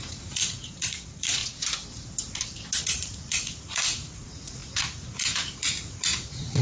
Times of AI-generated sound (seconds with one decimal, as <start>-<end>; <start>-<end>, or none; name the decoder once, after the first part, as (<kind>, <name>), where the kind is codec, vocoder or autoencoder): 0.0-1.4 (vocoder, Vocos); 2.8-6.6